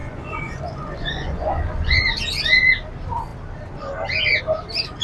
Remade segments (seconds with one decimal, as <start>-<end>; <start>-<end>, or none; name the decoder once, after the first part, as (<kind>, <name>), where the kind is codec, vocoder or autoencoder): 0.0-2.0 (vocoder, Vocos)